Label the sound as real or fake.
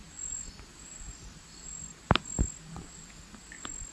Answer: real